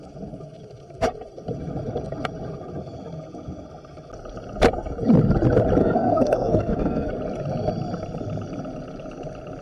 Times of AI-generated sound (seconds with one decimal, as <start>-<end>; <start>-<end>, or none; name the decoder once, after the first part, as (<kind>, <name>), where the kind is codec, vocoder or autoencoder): 5.8-7.1 (codec, SNAC)